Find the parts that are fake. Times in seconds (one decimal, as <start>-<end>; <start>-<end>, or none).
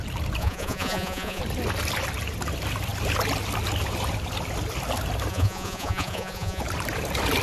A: 0.4-1.4; 5.3-6.6